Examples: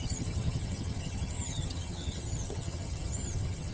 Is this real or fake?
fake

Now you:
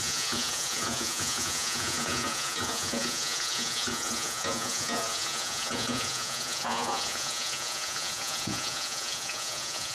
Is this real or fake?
fake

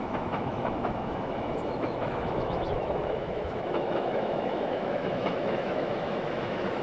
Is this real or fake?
fake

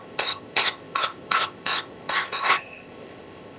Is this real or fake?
fake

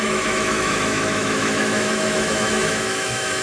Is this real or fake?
fake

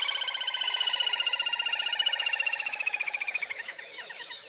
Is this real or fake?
fake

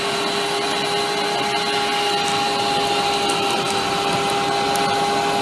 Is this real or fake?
real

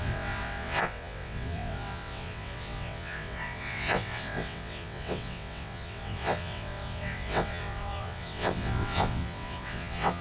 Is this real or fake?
fake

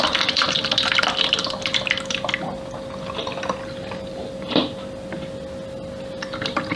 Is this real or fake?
real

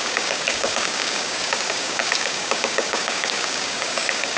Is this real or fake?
fake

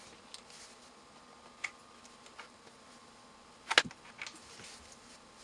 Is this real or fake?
real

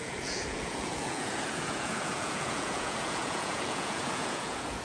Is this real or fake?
fake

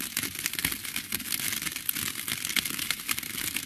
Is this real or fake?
real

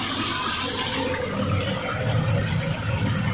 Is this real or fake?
real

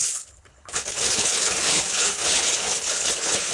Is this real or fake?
fake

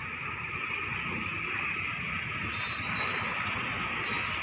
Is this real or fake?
real